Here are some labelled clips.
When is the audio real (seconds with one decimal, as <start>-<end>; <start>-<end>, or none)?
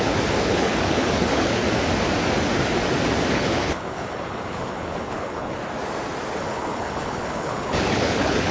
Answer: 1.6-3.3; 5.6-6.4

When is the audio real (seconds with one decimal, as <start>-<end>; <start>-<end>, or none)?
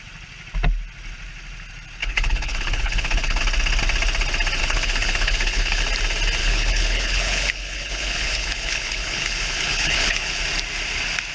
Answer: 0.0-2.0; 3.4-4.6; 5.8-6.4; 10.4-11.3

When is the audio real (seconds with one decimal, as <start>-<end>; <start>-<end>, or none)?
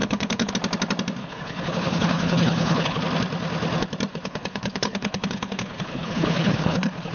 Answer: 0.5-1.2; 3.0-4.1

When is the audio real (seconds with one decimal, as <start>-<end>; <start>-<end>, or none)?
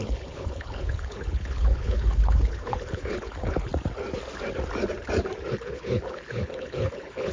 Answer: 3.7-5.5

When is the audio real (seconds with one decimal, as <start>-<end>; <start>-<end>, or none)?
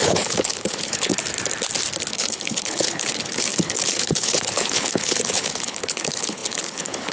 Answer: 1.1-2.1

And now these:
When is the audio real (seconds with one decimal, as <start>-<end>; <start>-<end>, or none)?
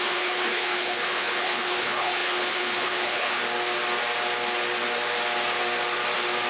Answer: 3.4-6.5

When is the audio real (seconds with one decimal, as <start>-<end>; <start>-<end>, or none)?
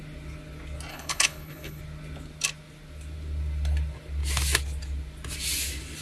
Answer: 0.0-0.9; 1.8-6.0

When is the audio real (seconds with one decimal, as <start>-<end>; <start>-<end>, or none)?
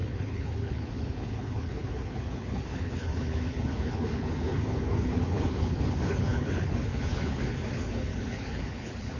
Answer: none